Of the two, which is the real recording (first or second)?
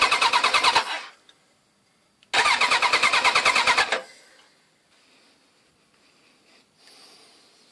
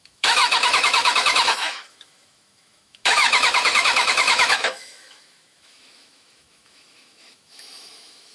first